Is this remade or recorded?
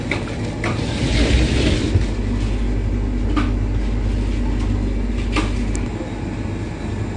recorded